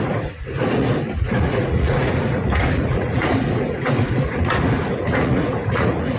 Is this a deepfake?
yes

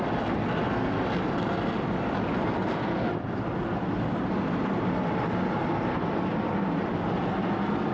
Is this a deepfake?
no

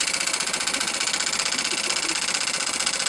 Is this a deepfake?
no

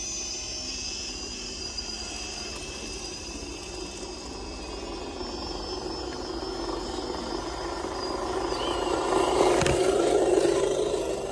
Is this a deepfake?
no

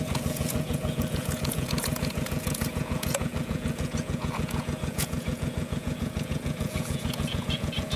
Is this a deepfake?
yes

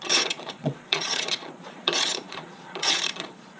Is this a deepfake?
yes